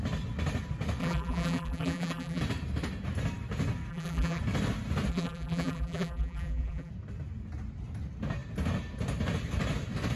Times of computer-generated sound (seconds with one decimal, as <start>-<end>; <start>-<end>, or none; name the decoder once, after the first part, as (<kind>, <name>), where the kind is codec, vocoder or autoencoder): 1.0-2.4 (vocoder, BigVGAN v2); 3.9-4.4; 5.1-6.9